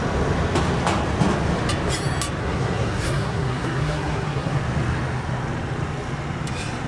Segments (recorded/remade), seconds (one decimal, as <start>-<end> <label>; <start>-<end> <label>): 0.0-2.4 recorded; 2.4-4.6 remade; 4.6-6.9 recorded